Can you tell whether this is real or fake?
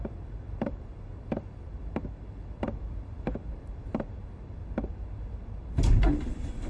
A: real